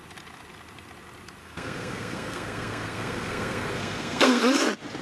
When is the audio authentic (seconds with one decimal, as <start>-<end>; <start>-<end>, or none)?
0.0-1.4; 4.4-5.0